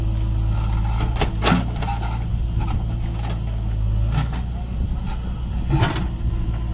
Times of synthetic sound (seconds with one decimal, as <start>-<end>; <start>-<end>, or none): none